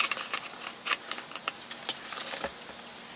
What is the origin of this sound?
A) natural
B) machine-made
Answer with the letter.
A